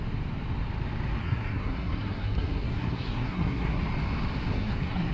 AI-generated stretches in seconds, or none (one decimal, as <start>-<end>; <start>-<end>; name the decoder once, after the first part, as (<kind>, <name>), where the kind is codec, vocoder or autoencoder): 1.2-3.8 (codec, SNAC); 4.5-5.1